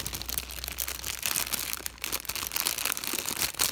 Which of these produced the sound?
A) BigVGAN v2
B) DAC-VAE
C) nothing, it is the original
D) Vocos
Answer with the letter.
C